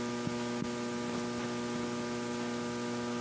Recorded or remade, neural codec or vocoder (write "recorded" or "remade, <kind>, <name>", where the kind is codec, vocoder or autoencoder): recorded